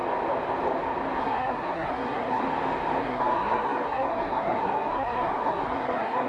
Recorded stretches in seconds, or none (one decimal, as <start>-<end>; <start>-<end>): 0.0-1.2; 2.4-3.0